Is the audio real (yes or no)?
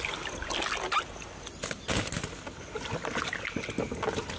yes